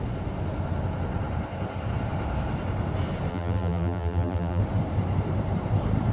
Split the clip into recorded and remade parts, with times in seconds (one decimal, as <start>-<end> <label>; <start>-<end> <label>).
0.0-3.3 recorded; 3.3-4.6 remade; 4.6-6.1 recorded